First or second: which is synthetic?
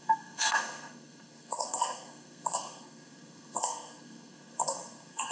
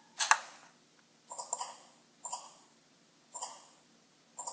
first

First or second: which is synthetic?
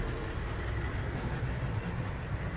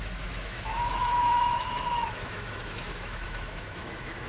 second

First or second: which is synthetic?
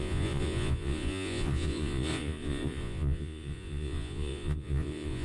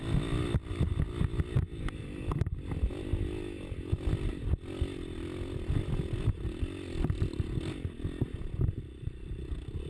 first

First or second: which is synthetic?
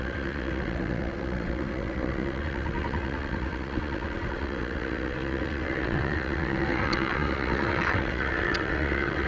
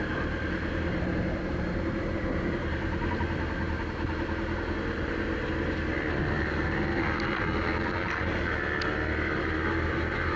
first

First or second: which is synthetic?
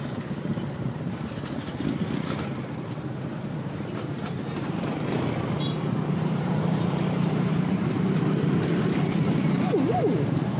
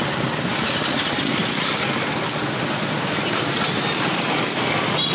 first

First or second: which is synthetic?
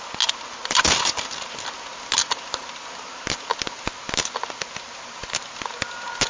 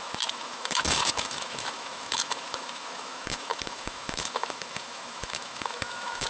second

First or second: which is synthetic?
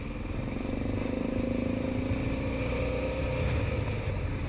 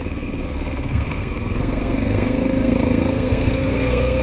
second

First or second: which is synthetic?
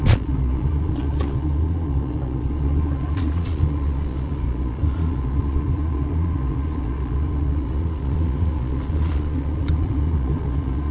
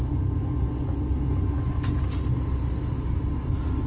first